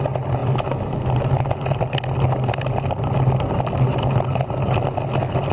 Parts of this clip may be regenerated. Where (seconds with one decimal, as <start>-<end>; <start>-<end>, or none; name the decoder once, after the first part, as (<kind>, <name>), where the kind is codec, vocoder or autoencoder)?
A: none